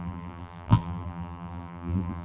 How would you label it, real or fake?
fake